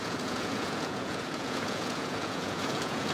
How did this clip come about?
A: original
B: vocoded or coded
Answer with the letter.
B